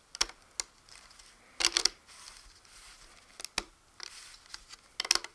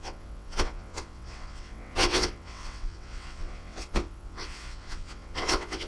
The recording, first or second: first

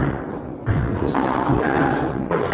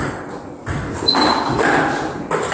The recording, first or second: second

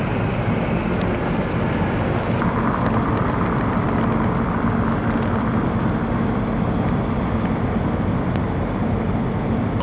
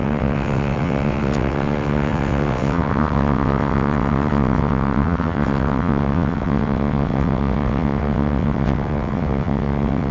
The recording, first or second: first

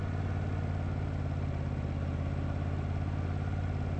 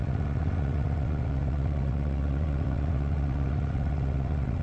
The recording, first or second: first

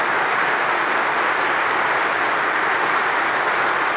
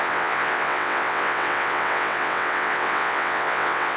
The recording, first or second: first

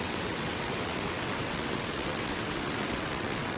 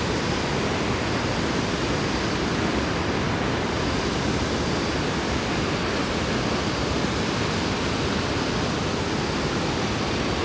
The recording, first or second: second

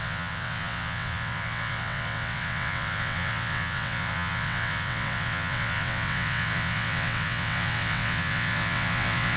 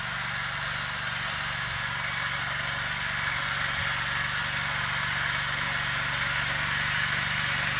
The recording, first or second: second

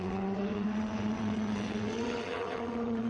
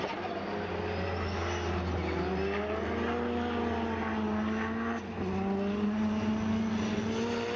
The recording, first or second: second